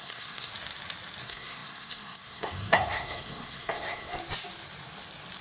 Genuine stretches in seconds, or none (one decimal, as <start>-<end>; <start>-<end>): 0.5-1.2; 4.1-5.4